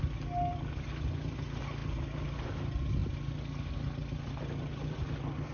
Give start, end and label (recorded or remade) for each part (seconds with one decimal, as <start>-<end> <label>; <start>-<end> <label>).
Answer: 0.0-5.5 recorded